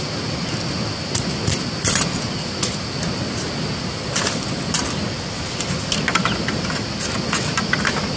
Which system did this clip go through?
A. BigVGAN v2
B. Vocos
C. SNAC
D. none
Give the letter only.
D